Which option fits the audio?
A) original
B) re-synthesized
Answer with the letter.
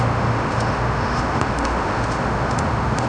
B